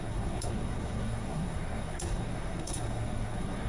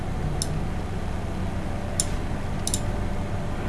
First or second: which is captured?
second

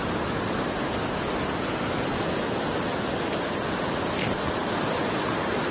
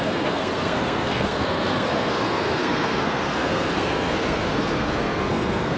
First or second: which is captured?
first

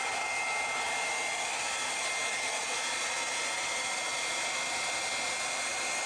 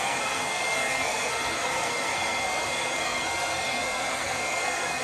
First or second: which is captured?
first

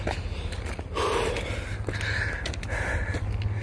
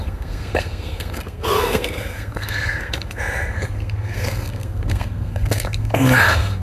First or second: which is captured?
first